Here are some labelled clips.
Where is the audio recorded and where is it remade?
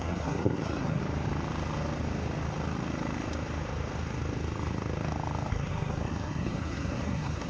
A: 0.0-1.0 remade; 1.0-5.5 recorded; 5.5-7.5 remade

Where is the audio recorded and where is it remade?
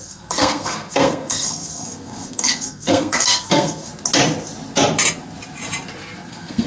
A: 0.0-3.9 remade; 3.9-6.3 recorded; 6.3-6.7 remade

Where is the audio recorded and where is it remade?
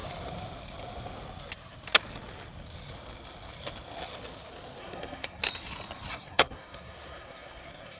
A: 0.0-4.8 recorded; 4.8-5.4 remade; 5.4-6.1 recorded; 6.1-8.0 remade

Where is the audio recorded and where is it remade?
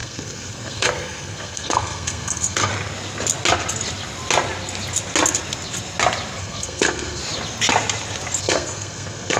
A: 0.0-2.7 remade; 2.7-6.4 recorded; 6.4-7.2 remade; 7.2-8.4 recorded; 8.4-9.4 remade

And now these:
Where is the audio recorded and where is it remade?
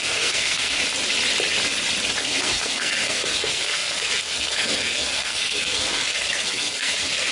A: 0.0-0.8 remade; 0.8-2.2 recorded; 2.2-7.3 remade